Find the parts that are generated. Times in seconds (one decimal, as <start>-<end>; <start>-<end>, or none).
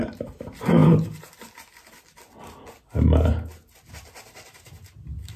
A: none